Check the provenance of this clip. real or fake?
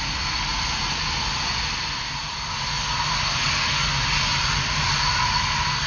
real